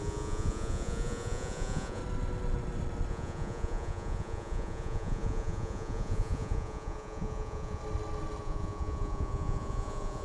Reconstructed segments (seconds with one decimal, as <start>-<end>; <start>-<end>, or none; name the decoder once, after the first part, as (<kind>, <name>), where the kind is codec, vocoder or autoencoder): 0.0-2.0 (vocoder, Vocos); 3.1-7.8; 8.4-10.2